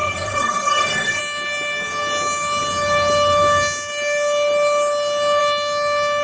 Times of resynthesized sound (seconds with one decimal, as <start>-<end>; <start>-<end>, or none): 0.0-1.2

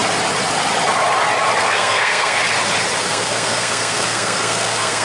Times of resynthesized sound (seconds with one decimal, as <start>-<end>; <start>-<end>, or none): 1.6-2.4; 3.0-5.0